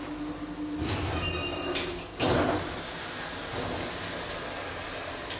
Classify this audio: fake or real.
real